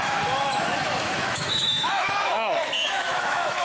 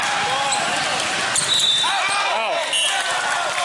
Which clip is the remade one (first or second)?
first